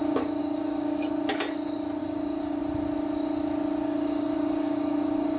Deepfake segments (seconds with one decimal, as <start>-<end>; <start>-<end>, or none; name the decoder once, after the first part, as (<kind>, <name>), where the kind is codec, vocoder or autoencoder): 0.4-1.0 (codec, DAC); 2.0-2.6; 3.8-5.4